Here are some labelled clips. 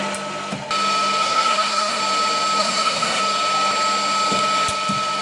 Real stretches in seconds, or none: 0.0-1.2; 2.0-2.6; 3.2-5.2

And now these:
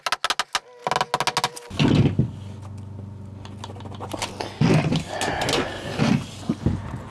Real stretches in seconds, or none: 0.0-7.1

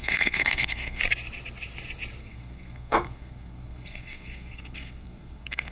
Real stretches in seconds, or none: 1.0-2.2

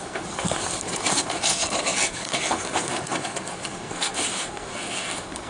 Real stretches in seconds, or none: none